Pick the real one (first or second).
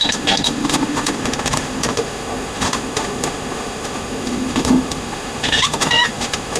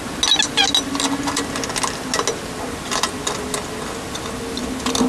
second